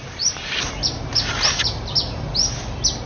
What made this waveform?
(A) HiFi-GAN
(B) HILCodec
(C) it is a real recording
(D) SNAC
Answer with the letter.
C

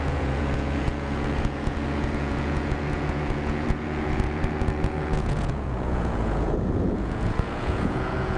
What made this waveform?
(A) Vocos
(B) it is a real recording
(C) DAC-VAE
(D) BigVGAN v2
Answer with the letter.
A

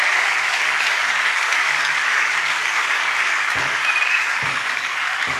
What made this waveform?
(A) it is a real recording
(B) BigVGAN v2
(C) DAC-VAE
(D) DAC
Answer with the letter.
D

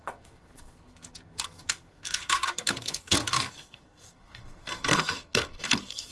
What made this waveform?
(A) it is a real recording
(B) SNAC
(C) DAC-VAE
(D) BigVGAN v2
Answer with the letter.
B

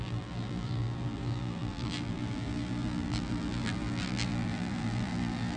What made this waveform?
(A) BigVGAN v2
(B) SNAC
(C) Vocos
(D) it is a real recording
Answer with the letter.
A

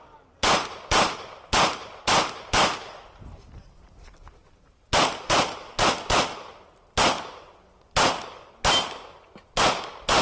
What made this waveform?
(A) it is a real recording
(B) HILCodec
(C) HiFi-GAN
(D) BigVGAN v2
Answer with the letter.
A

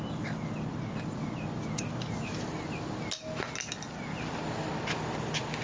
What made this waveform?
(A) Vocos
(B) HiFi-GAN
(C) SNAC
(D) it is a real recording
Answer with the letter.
D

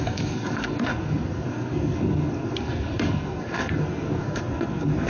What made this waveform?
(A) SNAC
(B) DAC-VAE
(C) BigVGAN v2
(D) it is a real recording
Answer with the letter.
A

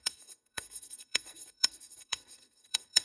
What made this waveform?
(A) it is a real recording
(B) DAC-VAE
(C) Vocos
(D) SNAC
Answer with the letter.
D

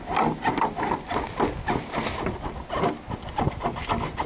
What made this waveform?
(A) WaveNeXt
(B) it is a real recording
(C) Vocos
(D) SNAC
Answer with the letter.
B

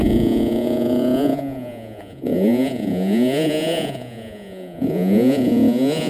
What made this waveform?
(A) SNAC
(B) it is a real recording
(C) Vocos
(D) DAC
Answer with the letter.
C